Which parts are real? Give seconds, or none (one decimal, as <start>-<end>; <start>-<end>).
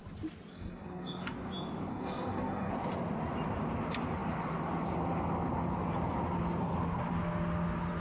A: 0.0-0.5; 1.2-1.9; 2.7-8.0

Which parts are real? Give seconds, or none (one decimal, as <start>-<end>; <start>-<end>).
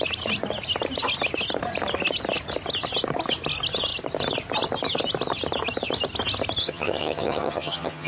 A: 0.0-6.6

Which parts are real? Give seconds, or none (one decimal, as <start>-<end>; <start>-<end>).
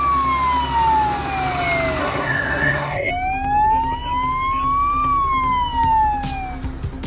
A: 0.0-2.0; 3.1-7.1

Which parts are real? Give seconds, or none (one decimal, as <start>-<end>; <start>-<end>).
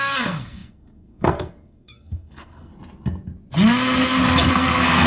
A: 2.7-4.5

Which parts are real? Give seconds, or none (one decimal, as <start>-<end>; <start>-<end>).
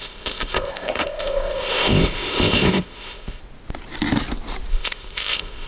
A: 3.4-4.7